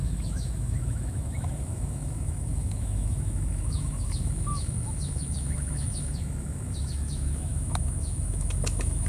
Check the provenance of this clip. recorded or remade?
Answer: remade